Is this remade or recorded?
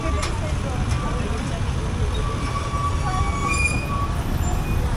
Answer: recorded